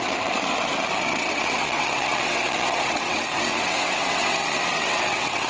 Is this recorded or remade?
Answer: remade